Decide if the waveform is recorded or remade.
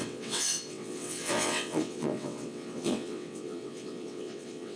remade